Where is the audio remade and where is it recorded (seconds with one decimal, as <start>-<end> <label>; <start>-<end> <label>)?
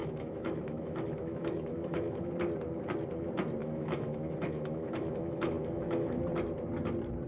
0.0-2.3 remade; 2.3-3.6 recorded; 3.6-6.2 remade; 6.2-7.3 recorded